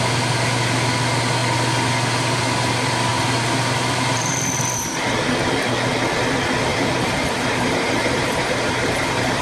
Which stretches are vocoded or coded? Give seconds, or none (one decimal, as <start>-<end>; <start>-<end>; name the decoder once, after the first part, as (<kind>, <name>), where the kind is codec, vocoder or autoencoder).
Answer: 3.1-5.0 (vocoder, BigVGAN v2); 6.7-9.4